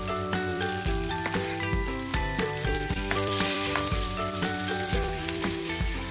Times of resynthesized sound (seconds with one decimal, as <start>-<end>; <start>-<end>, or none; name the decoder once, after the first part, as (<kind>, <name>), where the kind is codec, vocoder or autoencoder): 0.5-1.1 (vocoder, BigVGAN v2); 2.1-5.6